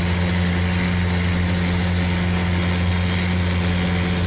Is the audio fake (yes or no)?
no